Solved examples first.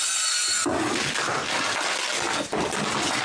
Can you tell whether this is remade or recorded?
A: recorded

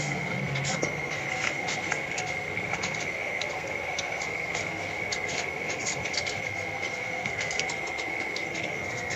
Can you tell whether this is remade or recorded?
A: remade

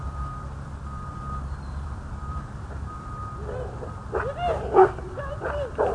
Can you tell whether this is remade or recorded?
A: remade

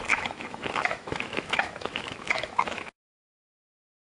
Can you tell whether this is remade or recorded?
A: remade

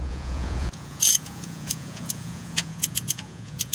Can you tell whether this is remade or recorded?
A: remade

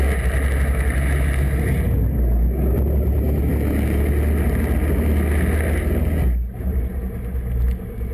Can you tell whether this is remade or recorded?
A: recorded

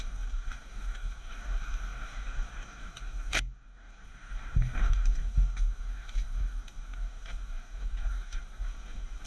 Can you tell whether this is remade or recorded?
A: remade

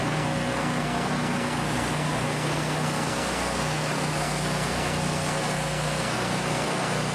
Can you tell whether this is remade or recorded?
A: remade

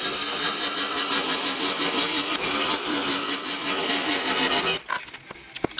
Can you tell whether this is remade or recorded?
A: recorded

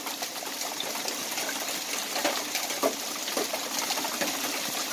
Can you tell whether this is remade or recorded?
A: recorded